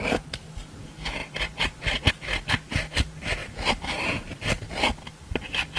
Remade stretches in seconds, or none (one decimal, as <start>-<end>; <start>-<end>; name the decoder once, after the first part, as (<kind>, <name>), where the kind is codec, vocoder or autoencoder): 3.4-4.6 (vocoder, BigVGAN v2)